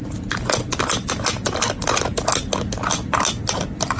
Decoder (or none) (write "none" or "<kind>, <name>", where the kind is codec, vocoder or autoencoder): none